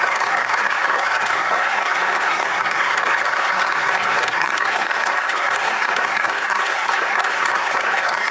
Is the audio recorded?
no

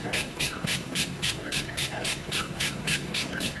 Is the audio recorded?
no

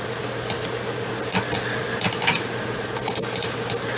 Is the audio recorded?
yes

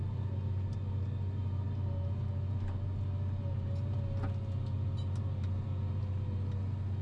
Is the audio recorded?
yes